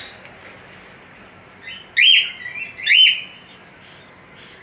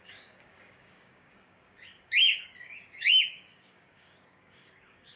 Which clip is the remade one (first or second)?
second